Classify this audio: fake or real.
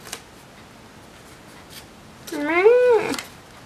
real